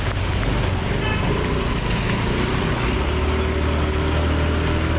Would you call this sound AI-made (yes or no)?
no